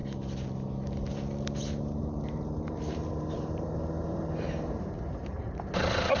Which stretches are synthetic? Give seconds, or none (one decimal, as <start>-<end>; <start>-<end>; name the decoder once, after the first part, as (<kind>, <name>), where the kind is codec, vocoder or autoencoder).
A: 2.0-5.7 (vocoder, BigVGAN v2)